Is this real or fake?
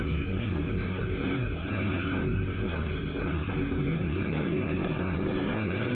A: fake